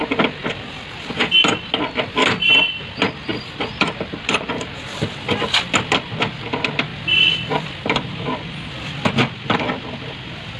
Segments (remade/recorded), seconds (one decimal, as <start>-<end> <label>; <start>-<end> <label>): 0.0-0.4 recorded; 0.4-1.5 remade; 1.5-3.3 recorded; 3.3-6.3 remade; 6.3-6.9 recorded; 6.9-8.7 remade; 8.7-10.6 recorded